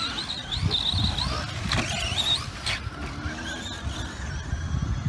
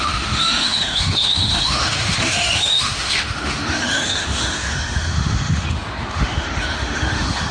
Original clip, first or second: first